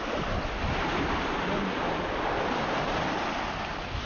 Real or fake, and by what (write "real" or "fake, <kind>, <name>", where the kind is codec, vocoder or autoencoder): real